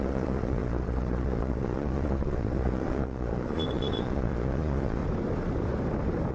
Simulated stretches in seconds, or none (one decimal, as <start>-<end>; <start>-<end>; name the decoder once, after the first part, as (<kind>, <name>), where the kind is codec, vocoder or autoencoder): 0.0-5.0 (vocoder, Vocos)